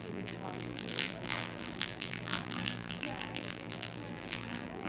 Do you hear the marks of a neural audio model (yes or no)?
yes